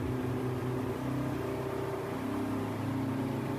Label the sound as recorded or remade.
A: recorded